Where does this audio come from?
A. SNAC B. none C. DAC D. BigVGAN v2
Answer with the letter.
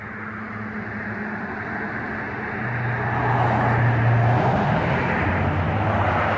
B